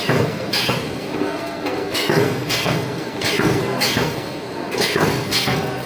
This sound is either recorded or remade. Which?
remade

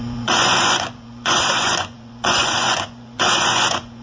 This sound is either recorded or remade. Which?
remade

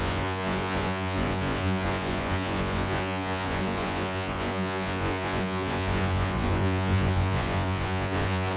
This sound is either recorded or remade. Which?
remade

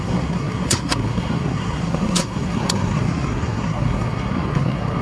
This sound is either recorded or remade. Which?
remade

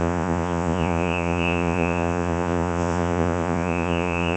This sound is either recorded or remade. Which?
remade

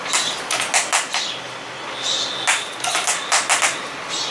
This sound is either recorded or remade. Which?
recorded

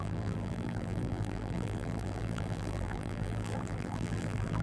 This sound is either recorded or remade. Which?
remade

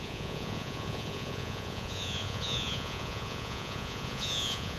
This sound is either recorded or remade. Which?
remade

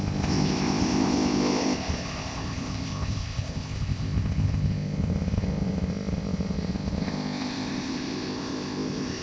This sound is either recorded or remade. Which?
remade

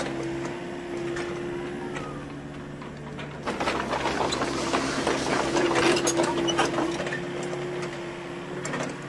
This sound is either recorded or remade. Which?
recorded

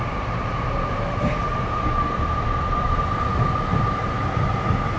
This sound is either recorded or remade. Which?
remade